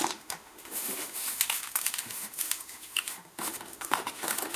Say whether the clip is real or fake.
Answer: fake